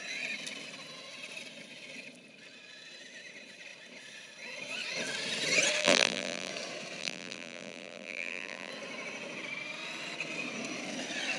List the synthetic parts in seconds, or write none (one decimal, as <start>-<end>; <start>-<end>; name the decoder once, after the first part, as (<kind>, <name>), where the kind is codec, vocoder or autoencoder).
5.8-6.5 (vocoder, BigVGAN v2); 7.0-8.7